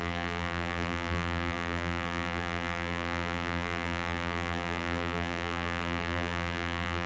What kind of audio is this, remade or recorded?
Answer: remade